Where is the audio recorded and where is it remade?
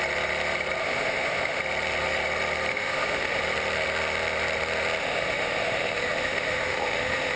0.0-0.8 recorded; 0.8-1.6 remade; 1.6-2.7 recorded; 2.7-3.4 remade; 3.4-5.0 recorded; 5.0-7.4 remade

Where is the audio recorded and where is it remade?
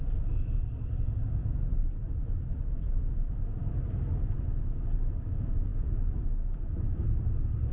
0.0-7.7 recorded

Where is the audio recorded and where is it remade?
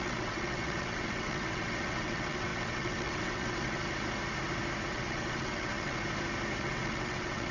0.0-3.8 remade; 3.8-4.9 recorded; 4.9-6.0 remade; 6.0-6.6 recorded; 6.6-7.5 remade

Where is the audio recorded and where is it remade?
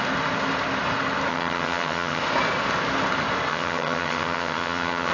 0.0-1.3 recorded; 1.3-2.2 remade; 2.2-3.5 recorded; 3.5-5.1 remade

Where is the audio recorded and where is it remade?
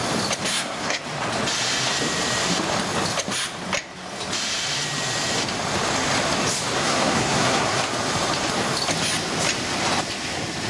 0.0-0.5 recorded; 0.5-1.0 remade; 1.0-6.8 recorded; 6.8-7.8 remade; 7.8-10.7 recorded